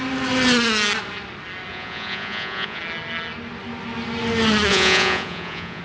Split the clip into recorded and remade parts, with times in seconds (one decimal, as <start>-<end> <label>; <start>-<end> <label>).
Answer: 0.0-1.7 recorded; 1.7-2.8 remade; 2.8-4.7 recorded; 4.7-5.8 remade